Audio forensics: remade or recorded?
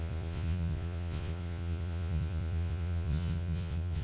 remade